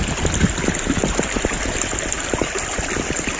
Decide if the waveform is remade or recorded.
recorded